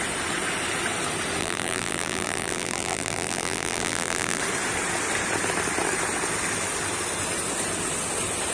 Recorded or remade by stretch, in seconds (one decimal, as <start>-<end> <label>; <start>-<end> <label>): 0.0-1.4 recorded; 1.4-4.4 remade; 4.4-8.5 recorded

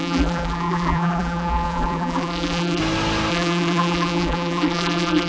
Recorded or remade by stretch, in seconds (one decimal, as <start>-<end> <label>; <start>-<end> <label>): 0.0-2.8 remade; 2.8-3.3 recorded; 3.3-5.3 remade